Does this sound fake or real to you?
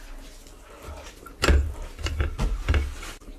real